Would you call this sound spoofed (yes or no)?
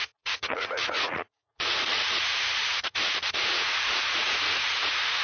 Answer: yes